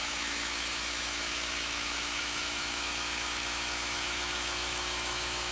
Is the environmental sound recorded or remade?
remade